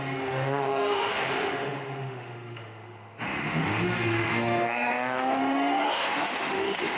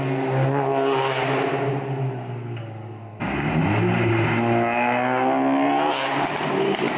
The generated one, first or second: first